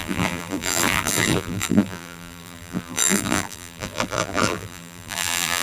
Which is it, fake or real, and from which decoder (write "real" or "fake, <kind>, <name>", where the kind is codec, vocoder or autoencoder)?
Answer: fake, vocoder, BigVGAN v2